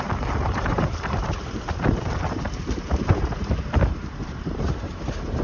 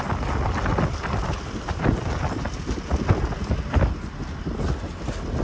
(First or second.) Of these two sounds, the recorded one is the second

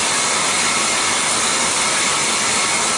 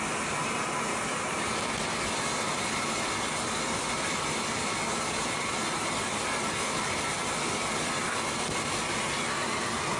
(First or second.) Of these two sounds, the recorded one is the second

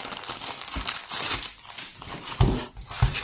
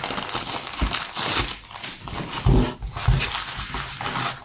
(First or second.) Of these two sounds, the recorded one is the second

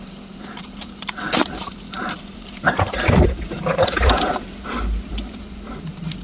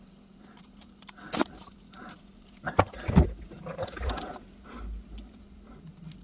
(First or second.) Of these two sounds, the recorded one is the second